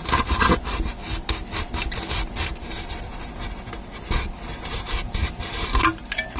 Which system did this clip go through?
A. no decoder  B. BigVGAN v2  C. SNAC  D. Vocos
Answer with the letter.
A